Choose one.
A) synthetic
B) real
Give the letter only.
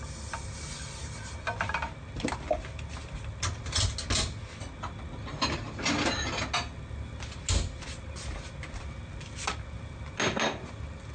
B